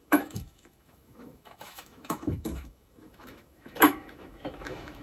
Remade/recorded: remade